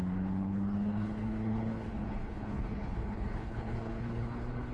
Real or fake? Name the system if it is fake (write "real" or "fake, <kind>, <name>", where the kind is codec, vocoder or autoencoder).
fake, codec, HILCodec